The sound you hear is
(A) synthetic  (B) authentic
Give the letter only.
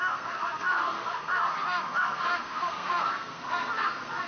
A